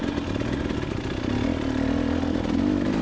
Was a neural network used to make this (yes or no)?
no